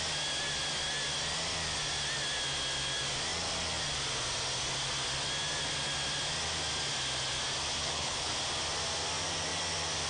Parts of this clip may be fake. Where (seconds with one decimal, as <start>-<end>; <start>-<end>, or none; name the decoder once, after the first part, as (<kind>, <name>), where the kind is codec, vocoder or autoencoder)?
7.8-8.3 (codec, HILCodec)